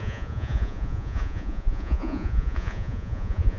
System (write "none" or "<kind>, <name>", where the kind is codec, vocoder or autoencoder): vocoder, Vocos